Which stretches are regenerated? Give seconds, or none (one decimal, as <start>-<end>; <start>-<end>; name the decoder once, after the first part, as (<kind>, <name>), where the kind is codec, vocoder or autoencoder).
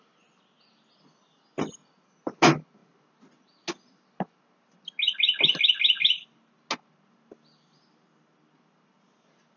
none